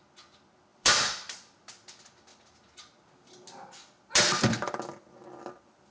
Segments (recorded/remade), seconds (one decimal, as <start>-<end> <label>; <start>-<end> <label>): 0.0-0.7 recorded; 0.7-1.7 remade; 1.7-5.9 recorded